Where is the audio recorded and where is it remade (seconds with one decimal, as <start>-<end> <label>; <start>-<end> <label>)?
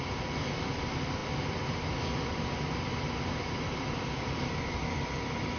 0.0-5.6 recorded